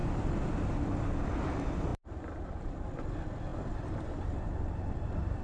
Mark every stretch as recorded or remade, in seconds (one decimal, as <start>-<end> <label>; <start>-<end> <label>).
0.0-5.4 recorded